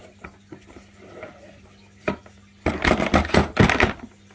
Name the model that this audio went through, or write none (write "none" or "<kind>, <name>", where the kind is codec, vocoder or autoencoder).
none